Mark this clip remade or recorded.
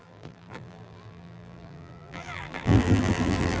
remade